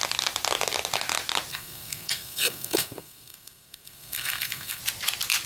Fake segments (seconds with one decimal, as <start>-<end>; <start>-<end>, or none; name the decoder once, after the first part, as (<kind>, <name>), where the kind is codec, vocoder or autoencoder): 1.5-4.8 (codec, SNAC)